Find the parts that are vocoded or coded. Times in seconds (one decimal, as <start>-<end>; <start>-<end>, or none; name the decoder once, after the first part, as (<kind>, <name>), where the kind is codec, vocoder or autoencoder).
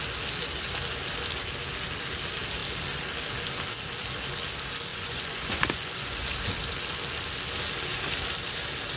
4.9-6.3 (vocoder, Vocos)